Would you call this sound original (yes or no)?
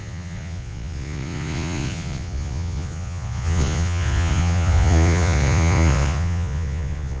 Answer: no